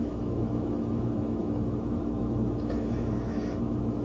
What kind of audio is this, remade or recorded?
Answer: remade